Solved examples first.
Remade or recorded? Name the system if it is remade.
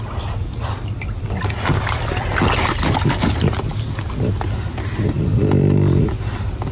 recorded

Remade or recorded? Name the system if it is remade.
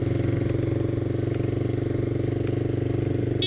recorded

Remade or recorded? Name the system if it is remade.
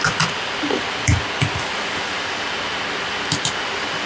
recorded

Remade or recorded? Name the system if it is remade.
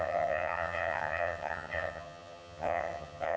remade, vocoder, HiFi-GAN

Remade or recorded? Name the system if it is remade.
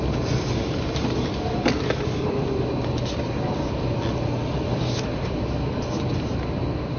recorded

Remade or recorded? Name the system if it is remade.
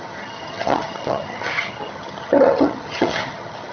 remade, vocoder, HiFi-GAN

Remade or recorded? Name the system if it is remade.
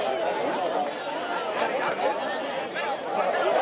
recorded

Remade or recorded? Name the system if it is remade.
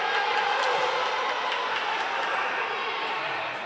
recorded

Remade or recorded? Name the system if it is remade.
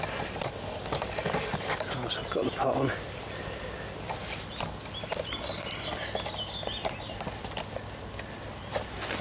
recorded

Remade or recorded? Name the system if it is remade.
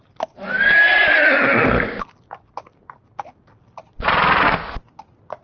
recorded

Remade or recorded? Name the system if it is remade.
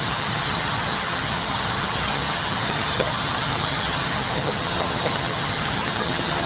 remade, vocoder, HiFi-GAN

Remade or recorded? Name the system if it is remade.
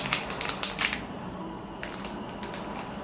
recorded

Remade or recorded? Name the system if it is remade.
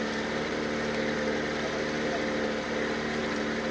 recorded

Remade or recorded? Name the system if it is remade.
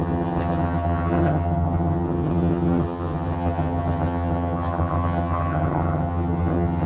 remade, vocoder, HiFi-GAN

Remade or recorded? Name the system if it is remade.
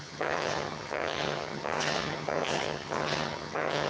remade, vocoder, HiFi-GAN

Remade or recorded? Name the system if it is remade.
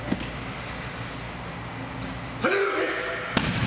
recorded